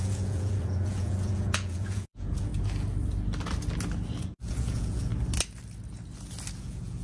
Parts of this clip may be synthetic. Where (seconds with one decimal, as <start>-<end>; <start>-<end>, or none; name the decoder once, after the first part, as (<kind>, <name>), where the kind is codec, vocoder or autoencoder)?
0.0-2.5 (vocoder, Vocos); 4.2-5.1; 6.6-7.0